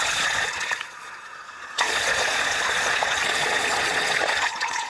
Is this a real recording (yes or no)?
no